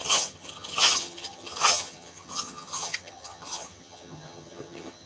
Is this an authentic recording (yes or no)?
no